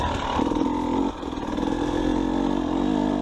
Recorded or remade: recorded